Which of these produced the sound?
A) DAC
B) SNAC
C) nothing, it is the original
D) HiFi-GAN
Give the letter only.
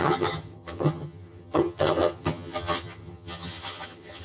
D